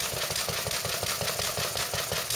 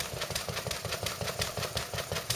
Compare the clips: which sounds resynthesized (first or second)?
second